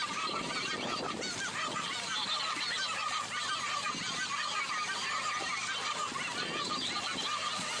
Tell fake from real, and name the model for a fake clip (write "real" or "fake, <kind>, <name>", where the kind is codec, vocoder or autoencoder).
real